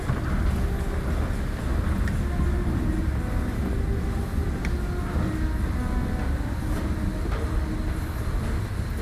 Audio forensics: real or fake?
real